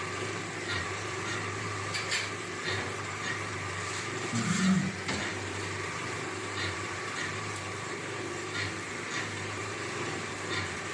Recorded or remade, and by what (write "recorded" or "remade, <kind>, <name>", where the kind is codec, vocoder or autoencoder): remade, vocoder, BigVGAN v2